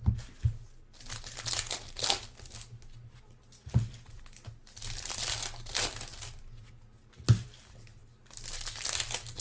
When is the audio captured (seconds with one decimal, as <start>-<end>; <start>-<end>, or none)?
0.0-9.4